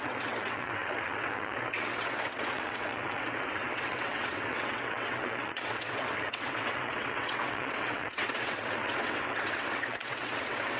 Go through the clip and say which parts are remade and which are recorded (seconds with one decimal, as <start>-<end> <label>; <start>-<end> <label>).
0.0-10.8 remade